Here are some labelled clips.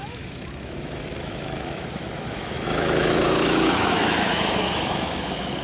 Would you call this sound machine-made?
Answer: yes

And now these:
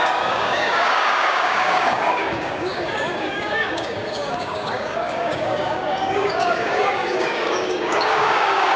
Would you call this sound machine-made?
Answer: yes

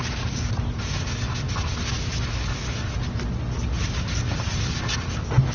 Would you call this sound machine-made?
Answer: no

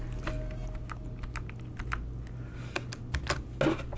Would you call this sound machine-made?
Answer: no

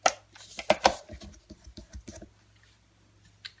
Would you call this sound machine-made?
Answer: no